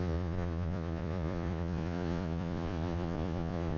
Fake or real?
fake